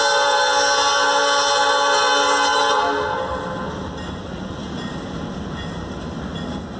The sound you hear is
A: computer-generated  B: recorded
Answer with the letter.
B